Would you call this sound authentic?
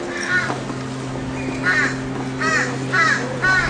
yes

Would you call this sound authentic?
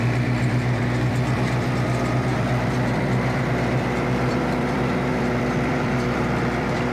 no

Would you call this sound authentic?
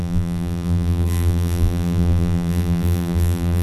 no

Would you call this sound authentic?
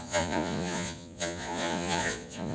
no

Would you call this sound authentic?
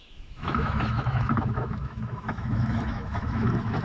no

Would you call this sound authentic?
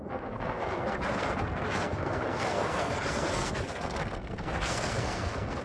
no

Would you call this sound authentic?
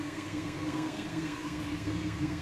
no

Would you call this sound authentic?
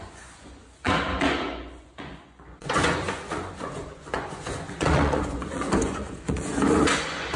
no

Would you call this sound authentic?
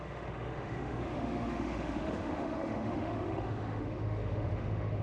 no